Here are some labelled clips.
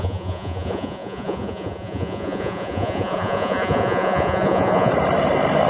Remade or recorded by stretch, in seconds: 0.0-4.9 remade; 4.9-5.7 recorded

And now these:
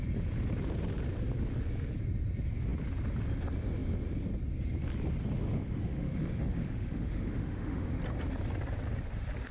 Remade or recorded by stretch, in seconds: 0.0-5.4 recorded; 5.4-7.9 remade; 7.9-9.5 recorded

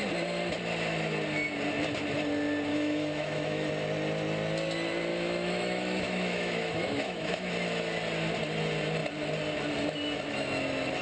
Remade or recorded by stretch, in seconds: 0.0-2.7 recorded; 2.7-3.7 remade; 3.7-5.1 recorded; 5.1-7.5 remade; 7.5-11.0 recorded